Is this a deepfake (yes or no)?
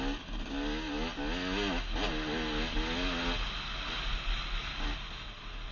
no